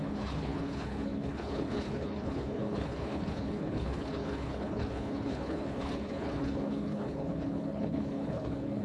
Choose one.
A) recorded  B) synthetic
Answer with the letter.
B